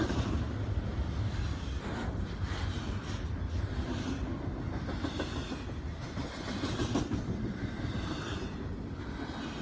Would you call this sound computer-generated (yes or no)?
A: no